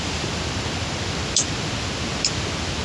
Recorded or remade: recorded